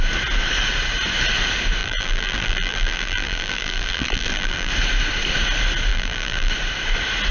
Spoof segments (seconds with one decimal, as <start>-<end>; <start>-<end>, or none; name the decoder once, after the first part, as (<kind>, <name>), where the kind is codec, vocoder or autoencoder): 1.8-4.7 (vocoder, BigVGAN v2); 5.9-6.5